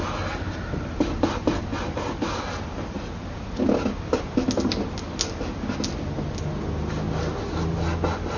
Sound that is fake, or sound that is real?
real